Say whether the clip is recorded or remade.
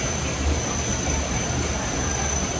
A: remade